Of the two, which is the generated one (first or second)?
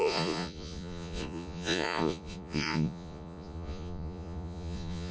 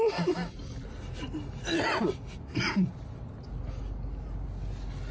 first